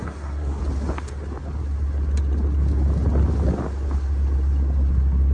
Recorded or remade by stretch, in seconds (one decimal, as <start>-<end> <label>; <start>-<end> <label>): 0.0-0.6 remade; 0.6-5.3 recorded